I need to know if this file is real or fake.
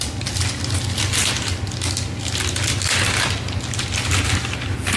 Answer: real